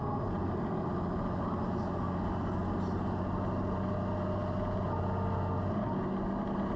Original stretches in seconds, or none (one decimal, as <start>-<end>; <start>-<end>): 0.0-6.8